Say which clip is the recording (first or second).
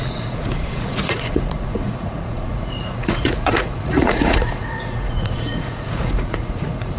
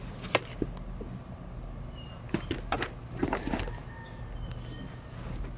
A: second